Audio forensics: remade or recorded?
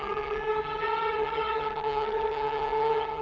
remade